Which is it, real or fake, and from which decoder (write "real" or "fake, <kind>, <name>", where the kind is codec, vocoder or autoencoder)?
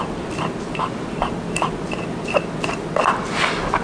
real